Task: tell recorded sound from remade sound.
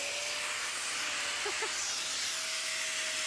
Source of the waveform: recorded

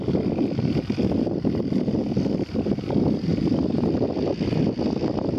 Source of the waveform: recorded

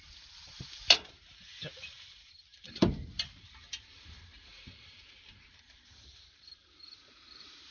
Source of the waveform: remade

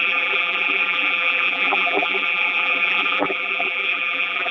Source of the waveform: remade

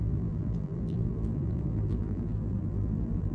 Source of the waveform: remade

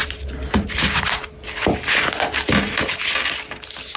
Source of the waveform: recorded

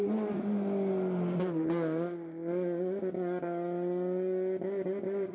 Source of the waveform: recorded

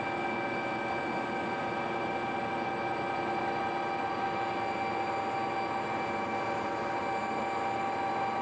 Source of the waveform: recorded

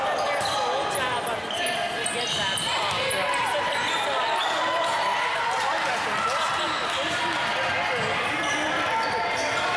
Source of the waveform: recorded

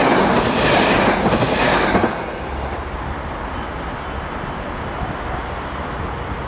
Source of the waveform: recorded